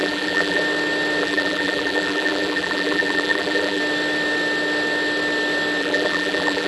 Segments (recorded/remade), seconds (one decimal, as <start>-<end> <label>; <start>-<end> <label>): 0.0-0.6 remade; 0.6-1.2 recorded; 1.2-3.8 remade; 3.8-5.8 recorded; 5.8-6.7 remade